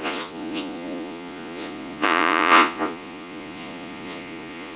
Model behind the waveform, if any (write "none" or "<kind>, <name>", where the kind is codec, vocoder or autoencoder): vocoder, Vocos